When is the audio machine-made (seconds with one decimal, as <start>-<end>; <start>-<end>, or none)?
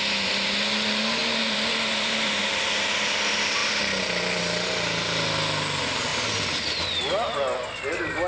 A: 1.2-2.4; 3.6-4.4; 6.1-6.8